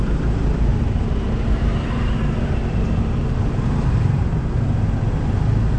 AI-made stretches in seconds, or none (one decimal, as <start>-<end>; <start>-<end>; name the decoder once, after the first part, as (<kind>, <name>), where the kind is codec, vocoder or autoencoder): 0.7-4.2 (vocoder, BigVGAN v2)